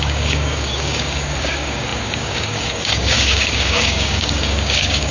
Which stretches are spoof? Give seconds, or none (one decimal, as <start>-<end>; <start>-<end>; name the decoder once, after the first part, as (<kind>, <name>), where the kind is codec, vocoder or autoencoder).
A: 0.0-5.1 (codec, DAC)